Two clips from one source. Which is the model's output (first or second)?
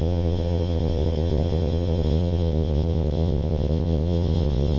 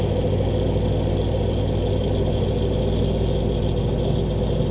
first